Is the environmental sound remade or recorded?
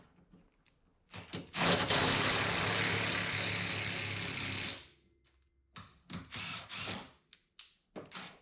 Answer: recorded